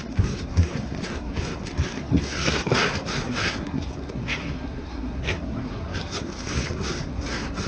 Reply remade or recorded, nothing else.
remade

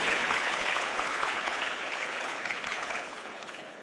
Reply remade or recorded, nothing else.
remade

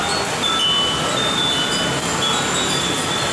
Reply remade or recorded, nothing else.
recorded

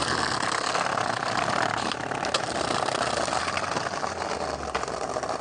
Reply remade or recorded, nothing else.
recorded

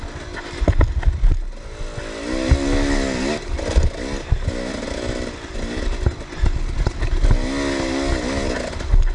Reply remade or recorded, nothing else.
recorded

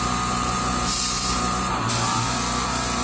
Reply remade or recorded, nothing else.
remade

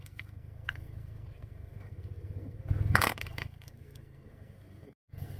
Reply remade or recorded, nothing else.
remade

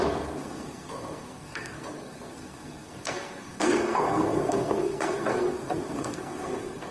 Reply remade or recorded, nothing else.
remade